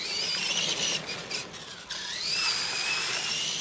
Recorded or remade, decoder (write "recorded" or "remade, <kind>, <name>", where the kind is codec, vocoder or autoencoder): recorded